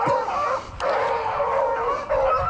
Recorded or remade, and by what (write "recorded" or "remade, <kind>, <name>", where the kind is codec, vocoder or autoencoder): recorded